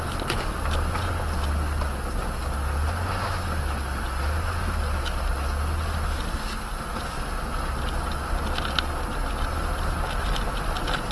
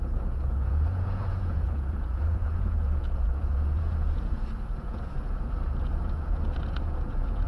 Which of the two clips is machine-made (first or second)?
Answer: second